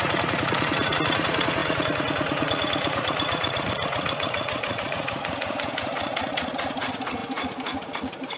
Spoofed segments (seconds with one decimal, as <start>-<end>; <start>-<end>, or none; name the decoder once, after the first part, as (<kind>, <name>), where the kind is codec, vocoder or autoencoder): 0.0-8.4 (vocoder, Vocos)